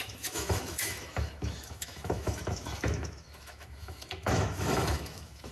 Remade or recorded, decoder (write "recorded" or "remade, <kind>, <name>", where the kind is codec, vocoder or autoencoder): remade, autoencoder, DAC-VAE